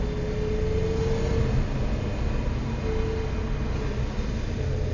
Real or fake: real